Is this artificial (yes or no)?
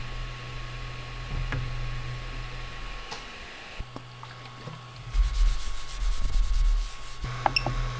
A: no